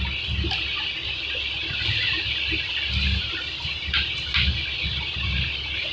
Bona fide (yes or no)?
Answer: yes